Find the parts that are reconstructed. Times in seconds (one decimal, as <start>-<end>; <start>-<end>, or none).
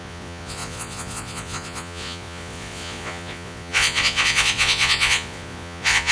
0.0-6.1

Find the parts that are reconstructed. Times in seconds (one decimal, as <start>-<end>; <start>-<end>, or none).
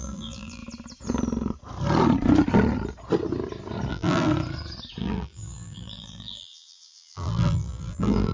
0.0-0.6; 3.9-4.3; 5.0-8.3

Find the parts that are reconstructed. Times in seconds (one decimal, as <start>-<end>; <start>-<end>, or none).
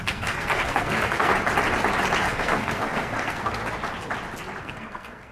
0.0-1.3; 2.2-3.6; 4.6-5.3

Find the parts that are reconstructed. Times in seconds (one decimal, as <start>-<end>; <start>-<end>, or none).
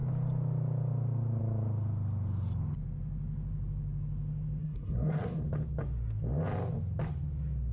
4.6-5.4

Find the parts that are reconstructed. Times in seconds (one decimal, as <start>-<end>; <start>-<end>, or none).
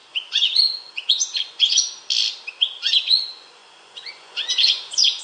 0.0-2.0; 2.6-5.2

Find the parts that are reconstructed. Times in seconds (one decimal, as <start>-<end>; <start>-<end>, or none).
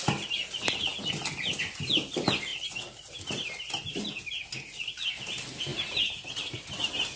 5.7-7.2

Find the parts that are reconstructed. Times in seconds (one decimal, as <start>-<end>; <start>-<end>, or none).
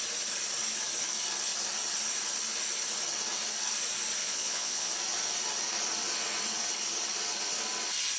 4.2-4.9